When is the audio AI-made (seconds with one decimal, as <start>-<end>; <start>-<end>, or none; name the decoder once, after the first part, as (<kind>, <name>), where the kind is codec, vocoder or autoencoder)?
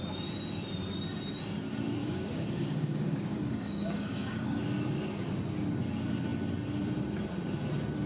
2.0-4.6 (codec, DAC)